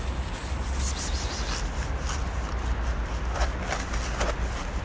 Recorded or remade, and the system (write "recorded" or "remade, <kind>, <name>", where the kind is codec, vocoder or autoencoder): recorded